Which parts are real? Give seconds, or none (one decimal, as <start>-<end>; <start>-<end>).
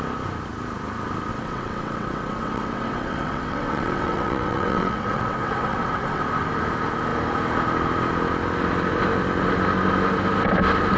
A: 0.0-1.3; 6.2-11.0